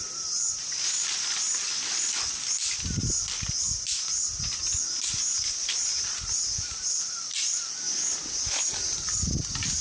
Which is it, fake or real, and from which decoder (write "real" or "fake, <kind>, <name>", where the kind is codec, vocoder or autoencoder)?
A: real